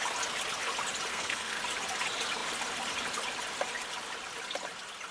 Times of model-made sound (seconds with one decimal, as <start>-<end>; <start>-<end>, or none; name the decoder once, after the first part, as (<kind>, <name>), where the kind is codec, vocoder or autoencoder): 1.1-1.6 (codec, SNAC)